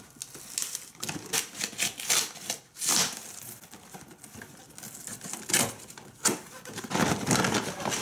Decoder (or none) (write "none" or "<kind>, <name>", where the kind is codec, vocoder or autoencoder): none